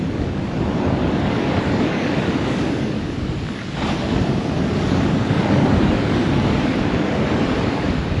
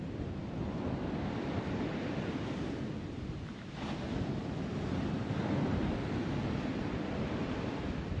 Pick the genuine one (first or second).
second